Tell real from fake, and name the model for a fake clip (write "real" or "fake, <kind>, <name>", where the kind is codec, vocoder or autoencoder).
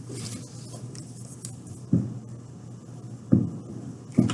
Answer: real